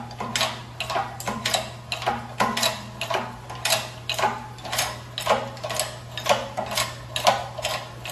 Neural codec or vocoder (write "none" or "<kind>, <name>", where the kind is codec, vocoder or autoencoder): none